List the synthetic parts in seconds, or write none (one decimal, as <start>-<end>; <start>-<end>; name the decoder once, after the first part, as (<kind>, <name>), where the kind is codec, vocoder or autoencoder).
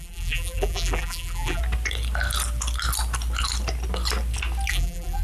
0.0-1.6 (vocoder, BigVGAN v2); 4.7-5.2